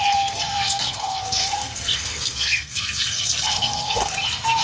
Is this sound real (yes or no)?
no